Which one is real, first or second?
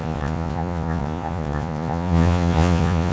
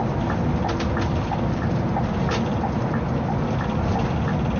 second